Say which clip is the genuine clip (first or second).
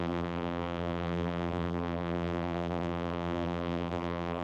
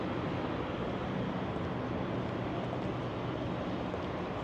second